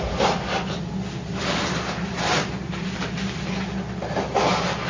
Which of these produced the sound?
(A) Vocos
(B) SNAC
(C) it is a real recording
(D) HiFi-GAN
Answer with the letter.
C